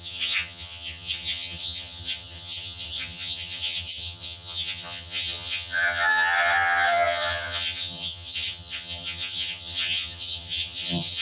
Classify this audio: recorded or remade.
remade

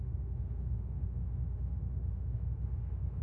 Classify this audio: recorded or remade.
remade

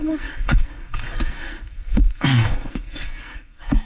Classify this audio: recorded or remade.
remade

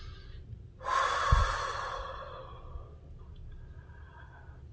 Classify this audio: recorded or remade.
recorded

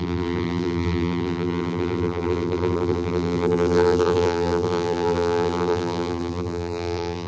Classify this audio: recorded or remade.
remade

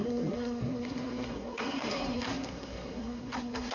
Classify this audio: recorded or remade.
remade